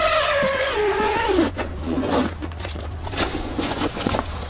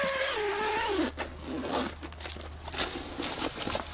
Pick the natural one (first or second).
second